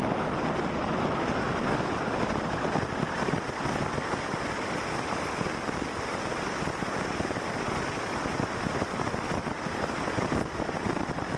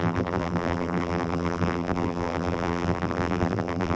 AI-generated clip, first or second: second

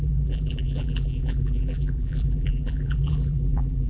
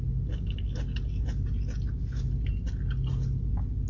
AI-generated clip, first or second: first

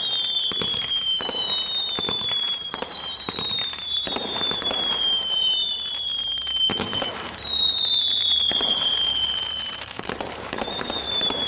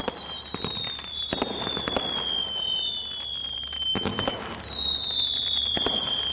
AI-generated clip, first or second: first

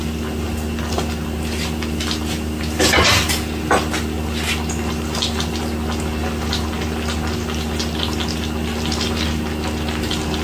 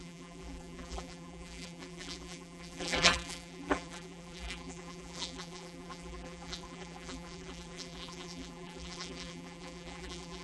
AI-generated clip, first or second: second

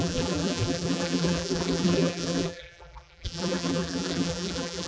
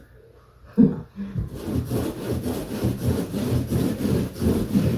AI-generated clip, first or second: first